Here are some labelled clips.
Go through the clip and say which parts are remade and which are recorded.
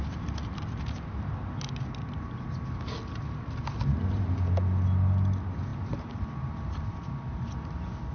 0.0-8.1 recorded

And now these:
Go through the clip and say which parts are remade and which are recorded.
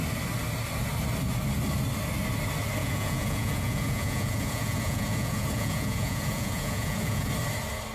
0.0-2.8 recorded; 2.8-7.3 remade; 7.3-7.9 recorded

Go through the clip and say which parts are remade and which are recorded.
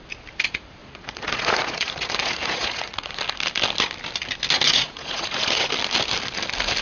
0.0-0.8 recorded; 0.8-3.2 remade; 3.2-4.7 recorded; 4.7-5.7 remade; 5.7-6.8 recorded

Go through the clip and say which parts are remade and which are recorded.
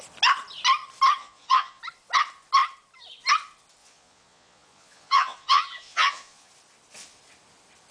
0.0-1.2 recorded; 1.2-1.8 remade; 1.8-3.8 recorded; 3.8-6.5 remade; 6.5-7.9 recorded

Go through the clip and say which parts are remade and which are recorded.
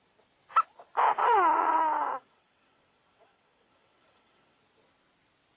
0.0-1.2 recorded; 1.2-4.6 remade; 4.6-5.6 recorded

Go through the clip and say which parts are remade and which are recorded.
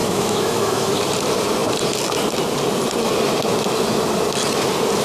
0.0-0.9 remade; 0.9-5.0 recorded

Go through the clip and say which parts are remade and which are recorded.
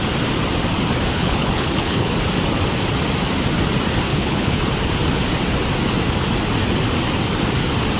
0.0-1.1 recorded; 1.1-2.1 remade; 2.1-4.1 recorded; 4.1-4.6 remade; 4.6-8.0 recorded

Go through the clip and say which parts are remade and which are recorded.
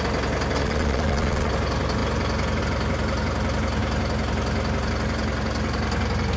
0.0-0.6 recorded; 0.6-1.5 remade; 1.5-6.4 recorded